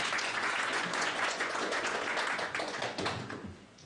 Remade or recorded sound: remade